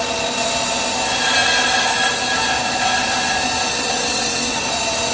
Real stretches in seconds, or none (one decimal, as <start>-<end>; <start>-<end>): 0.0-3.7; 4.6-5.1